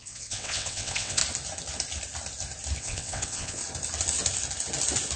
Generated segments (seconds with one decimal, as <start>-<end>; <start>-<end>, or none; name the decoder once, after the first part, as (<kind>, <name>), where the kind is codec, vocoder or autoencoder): 0.0-1.2 (vocoder, WaveNeXt); 2.8-3.6